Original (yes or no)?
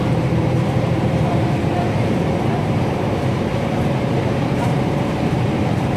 no